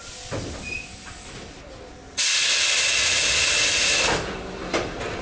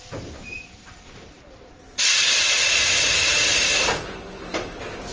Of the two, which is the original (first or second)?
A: first